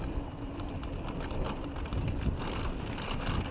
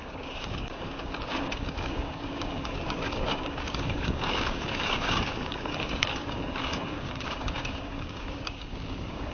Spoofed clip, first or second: second